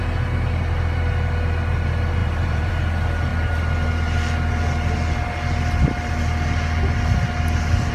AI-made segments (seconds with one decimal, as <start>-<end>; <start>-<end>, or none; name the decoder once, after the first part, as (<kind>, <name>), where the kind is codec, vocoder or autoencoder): 2.2-2.7 (vocoder, BigVGAN v2)